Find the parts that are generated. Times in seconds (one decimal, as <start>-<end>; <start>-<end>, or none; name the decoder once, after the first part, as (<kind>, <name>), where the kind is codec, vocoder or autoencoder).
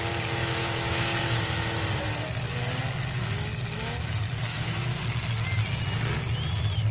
0.4-1.2 (autoencoder, DAC-VAE); 4.5-5.0